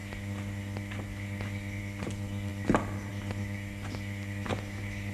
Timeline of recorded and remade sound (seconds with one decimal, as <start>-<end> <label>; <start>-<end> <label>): 0.0-5.1 recorded

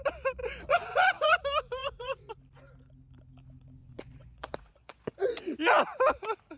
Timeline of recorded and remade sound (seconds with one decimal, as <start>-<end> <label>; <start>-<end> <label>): 0.0-0.4 recorded; 0.4-1.4 remade; 1.4-1.8 recorded; 1.8-2.3 remade; 2.3-3.8 recorded; 3.8-5.6 remade; 5.6-6.6 recorded

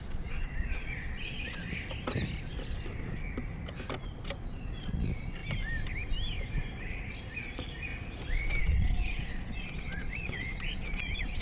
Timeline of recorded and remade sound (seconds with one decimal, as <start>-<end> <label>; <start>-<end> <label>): 0.0-1.6 remade; 1.6-4.0 recorded; 4.0-5.4 remade; 5.4-7.4 recorded; 7.4-7.9 remade; 7.9-8.6 recorded; 8.6-11.4 remade

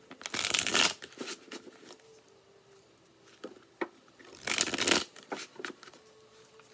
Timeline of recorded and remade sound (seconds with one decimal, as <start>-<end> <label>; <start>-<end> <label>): 0.0-6.7 recorded

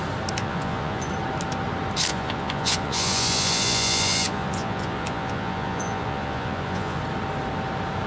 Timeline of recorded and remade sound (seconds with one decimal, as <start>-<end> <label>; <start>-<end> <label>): 0.0-0.4 recorded; 0.4-1.1 remade; 1.1-2.1 recorded; 2.1-7.0 remade; 7.0-8.1 recorded

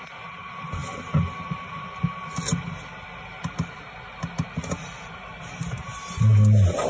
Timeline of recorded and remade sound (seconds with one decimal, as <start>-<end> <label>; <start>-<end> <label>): 0.0-6.9 recorded

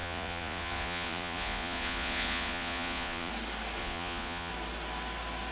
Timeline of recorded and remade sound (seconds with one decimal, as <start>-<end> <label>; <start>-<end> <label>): 0.0-3.3 remade; 3.3-3.8 recorded; 3.8-4.5 remade; 4.5-5.5 recorded